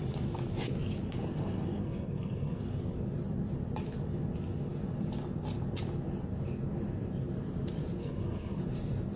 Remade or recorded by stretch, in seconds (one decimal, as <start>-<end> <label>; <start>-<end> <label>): 0.0-1.8 recorded; 1.8-2.6 remade; 2.6-8.0 recorded; 8.0-8.6 remade; 8.6-9.2 recorded